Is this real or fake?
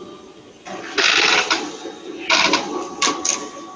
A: real